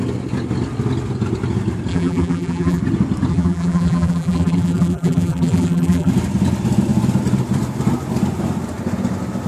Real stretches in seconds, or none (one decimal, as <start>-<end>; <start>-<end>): 0.0-1.9; 2.8-3.3; 6.1-9.5

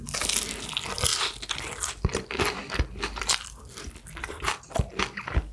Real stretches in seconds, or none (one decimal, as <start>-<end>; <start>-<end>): 0.0-2.6; 4.5-5.5

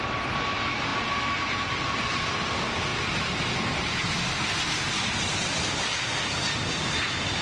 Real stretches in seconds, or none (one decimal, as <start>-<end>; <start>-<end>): 0.0-7.4

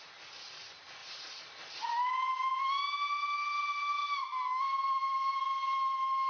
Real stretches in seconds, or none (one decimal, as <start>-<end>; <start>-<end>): 0.0-1.0; 2.1-4.0; 5.4-6.3

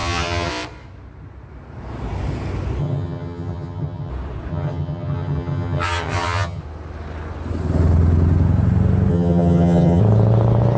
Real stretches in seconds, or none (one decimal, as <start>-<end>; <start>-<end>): 0.5-2.8; 4.1-4.5; 6.6-9.1; 10.0-10.8

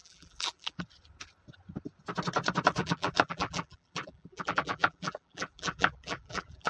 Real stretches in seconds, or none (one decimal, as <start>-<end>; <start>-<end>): 0.8-2.8

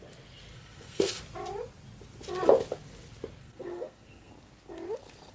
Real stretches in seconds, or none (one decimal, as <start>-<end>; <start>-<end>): 0.0-0.5; 1.2-3.4; 4.3-5.3

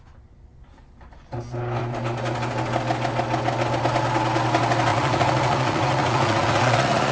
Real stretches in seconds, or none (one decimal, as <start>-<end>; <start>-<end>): 0.0-4.9